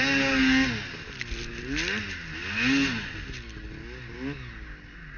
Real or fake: real